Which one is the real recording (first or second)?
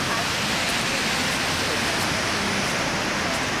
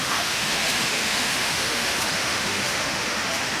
first